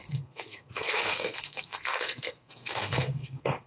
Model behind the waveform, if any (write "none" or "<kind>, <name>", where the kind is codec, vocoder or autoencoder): codec, SNAC